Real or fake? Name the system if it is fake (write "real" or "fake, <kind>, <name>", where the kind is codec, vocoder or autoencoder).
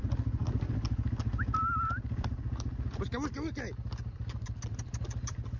real